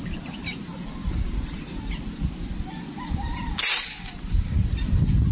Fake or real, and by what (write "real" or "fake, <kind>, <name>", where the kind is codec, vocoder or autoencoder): real